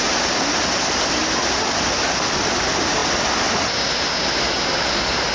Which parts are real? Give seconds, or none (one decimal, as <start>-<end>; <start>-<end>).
0.0-5.3

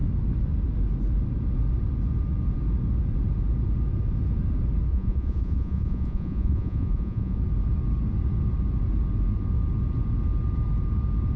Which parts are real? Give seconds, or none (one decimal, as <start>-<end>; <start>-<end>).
0.0-4.9; 7.4-11.4